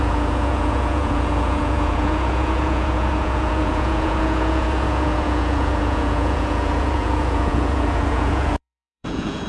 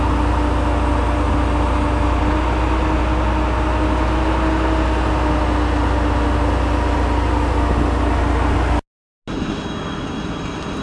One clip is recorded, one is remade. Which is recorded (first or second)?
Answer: second